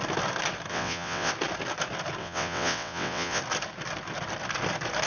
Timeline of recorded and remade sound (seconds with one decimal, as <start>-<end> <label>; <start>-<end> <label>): 0.0-0.7 recorded; 0.7-1.3 remade; 1.3-2.2 recorded; 2.2-3.4 remade; 3.4-5.1 recorded